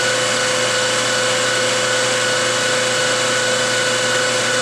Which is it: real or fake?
real